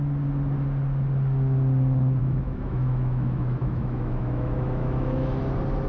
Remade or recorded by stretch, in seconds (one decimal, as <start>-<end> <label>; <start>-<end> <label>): 0.0-2.2 recorded; 2.2-5.4 remade; 5.4-5.9 recorded